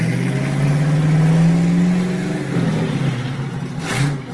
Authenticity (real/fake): real